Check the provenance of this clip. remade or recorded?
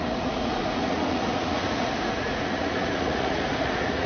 remade